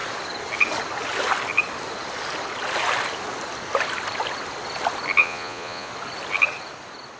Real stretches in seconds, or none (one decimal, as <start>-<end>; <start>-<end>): 0.0-5.2; 5.9-7.2